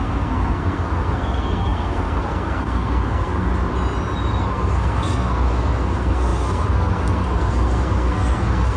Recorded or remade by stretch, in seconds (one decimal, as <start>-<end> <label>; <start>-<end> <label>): 0.0-3.5 remade; 3.5-4.4 recorded; 4.4-8.8 remade